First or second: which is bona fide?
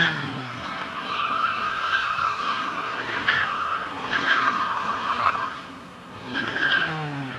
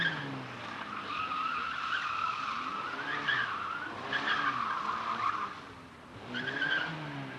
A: second